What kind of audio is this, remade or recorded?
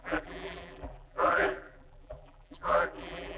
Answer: remade